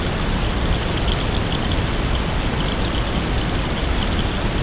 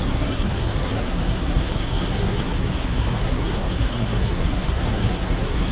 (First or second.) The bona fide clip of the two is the first